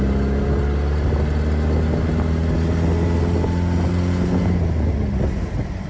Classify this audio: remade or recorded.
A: recorded